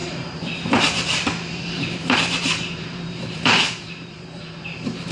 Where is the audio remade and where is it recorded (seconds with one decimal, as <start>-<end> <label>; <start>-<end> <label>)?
0.0-5.1 remade